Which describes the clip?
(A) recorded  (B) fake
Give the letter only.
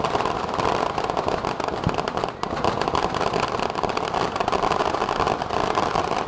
B